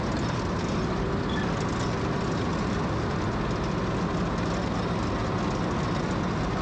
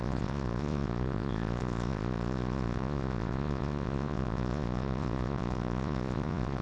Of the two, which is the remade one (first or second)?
second